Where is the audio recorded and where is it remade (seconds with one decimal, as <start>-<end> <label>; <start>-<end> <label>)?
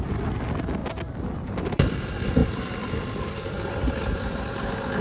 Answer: 0.0-0.8 recorded; 0.8-2.0 remade; 2.0-2.4 recorded; 2.4-4.5 remade; 4.5-5.0 recorded